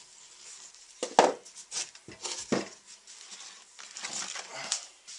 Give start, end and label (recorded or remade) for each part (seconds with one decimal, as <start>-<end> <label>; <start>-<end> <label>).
0.0-1.0 remade; 1.0-4.1 recorded; 4.1-5.2 remade

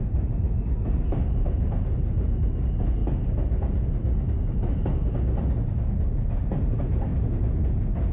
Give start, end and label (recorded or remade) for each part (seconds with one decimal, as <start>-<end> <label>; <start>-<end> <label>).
0.0-3.0 remade; 3.0-6.3 recorded; 6.3-7.1 remade; 7.1-8.1 recorded

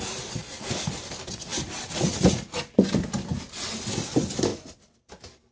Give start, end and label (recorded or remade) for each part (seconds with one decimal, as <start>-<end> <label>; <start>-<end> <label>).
0.0-5.5 recorded

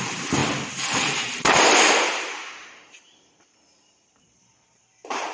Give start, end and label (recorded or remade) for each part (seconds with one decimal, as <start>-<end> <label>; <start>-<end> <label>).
0.0-0.4 remade; 0.4-1.1 recorded; 1.1-5.3 remade

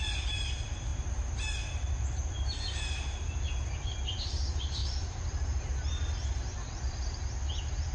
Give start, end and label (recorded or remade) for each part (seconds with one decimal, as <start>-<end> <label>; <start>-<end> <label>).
0.0-4.8 recorded; 4.8-7.5 remade; 7.5-7.9 recorded

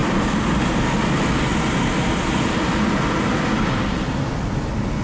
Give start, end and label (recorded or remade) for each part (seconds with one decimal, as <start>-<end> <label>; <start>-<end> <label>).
0.0-0.6 remade; 0.6-1.5 recorded; 1.5-4.5 remade; 4.5-5.0 recorded